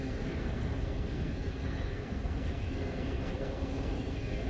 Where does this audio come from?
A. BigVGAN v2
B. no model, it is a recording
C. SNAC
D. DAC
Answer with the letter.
C